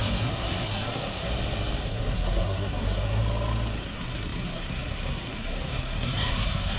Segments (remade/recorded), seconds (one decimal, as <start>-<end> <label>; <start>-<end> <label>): 0.0-1.3 remade; 1.3-1.8 recorded; 1.8-3.2 remade; 3.2-3.8 recorded; 3.8-6.8 remade